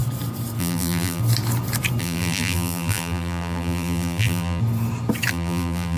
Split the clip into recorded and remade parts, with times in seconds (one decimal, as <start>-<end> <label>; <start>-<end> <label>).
0.0-0.6 recorded; 0.6-1.2 remade; 1.2-2.0 recorded; 2.0-4.6 remade; 4.6-5.3 recorded; 5.3-6.0 remade